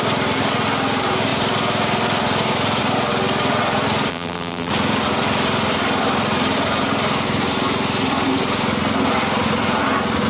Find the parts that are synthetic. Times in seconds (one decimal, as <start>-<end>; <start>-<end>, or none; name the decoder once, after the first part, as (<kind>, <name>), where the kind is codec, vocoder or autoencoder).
4.1-4.7 (vocoder, BigVGAN v2)